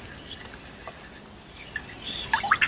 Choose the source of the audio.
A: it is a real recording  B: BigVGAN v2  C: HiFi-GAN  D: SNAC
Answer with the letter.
A